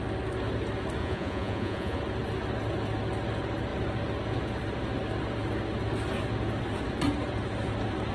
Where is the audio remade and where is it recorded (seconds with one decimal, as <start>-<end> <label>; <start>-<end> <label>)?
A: 0.0-1.0 recorded; 1.0-2.0 remade; 2.0-8.1 recorded